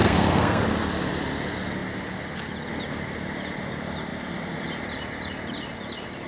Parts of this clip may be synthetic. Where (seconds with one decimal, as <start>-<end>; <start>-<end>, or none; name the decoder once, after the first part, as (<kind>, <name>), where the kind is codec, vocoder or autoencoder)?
0.0-0.6 (codec, SNAC)